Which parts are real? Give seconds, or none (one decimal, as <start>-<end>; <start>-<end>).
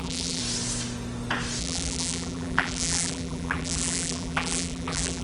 0.4-1.6